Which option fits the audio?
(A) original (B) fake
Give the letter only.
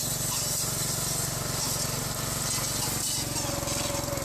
A